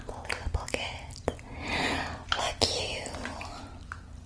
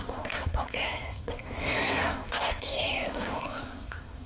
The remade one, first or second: second